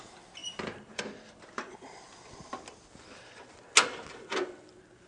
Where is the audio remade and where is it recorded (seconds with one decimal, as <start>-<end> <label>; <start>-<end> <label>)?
0.0-0.4 recorded; 0.4-1.0 remade; 1.0-5.1 recorded